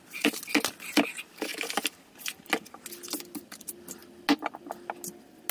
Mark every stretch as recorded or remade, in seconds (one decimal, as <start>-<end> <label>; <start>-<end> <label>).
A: 0.0-5.5 recorded